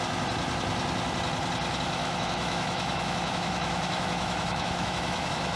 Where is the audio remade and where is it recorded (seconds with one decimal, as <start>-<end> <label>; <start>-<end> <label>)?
0.0-2.0 recorded; 2.0-5.6 remade